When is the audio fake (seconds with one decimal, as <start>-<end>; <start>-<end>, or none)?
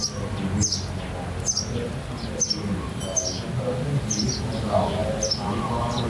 none